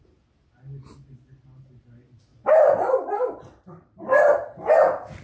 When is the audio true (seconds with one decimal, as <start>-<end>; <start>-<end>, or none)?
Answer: 0.0-2.3; 4.7-5.2